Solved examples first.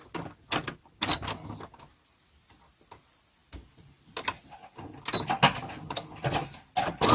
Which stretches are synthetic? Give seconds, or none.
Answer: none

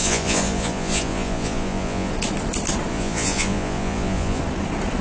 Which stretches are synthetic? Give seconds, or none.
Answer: 0.0-2.1; 2.9-4.4

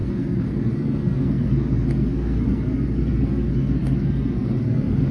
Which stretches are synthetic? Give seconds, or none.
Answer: 0.0-5.1

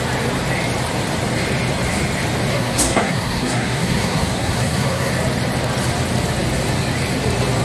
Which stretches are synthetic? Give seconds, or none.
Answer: 2.5-5.1

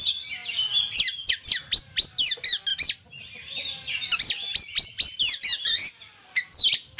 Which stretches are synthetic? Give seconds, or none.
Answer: none

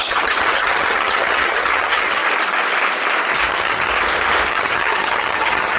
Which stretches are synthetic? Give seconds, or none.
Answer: 0.0-2.2; 3.5-3.9; 4.5-5.8